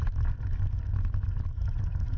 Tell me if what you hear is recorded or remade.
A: recorded